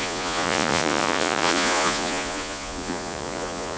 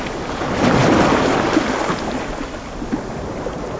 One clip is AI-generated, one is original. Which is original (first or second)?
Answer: second